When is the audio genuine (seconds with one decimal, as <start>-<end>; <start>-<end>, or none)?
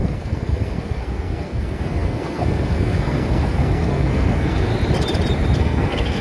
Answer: 4.7-5.6